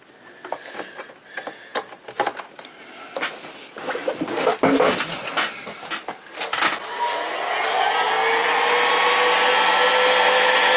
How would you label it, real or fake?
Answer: real